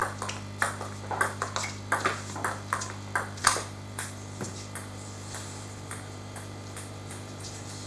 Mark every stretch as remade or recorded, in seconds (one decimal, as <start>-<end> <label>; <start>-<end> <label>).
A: 0.0-3.4 recorded; 3.4-7.9 remade